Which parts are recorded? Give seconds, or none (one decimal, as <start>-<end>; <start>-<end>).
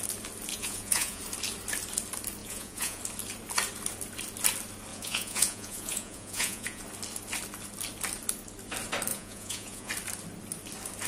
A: 0.0-0.5; 1.2-2.4; 3.0-4.9; 6.8-9.1; 9.9-11.1